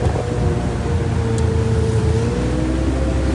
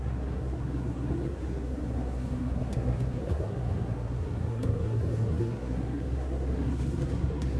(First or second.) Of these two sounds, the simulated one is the second